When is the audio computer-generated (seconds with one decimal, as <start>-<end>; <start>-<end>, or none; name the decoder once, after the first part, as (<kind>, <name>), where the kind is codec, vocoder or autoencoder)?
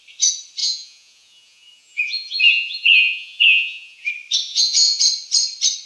0.6-4.1 (vocoder, Vocos); 4.5-5.0